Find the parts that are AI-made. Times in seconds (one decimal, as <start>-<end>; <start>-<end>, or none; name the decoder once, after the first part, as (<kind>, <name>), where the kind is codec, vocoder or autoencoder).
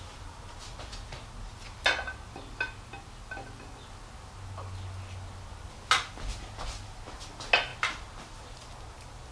none